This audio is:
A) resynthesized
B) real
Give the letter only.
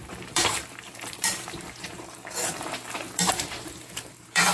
A